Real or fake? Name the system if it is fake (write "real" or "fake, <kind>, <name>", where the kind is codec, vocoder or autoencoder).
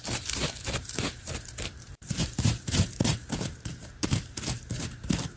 fake, vocoder, BigVGAN v2